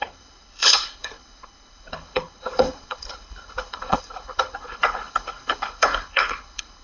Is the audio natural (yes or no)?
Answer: no